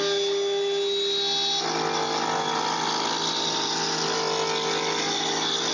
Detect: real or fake real